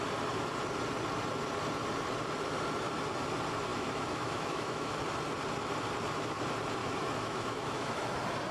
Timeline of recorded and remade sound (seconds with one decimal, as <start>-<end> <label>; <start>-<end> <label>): 0.0-3.7 recorded; 3.7-5.0 remade; 5.0-6.8 recorded; 6.8-8.1 remade; 8.1-8.5 recorded